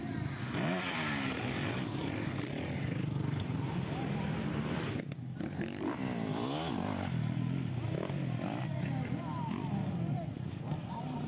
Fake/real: real